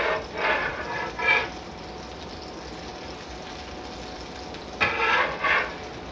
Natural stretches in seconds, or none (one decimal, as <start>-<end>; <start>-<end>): 0.0-6.1